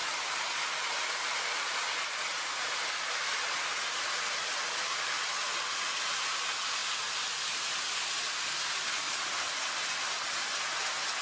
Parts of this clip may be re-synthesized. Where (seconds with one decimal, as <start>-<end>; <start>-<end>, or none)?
none